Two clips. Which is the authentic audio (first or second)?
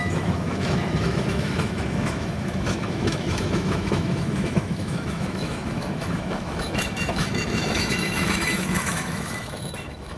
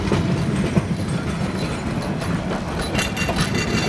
second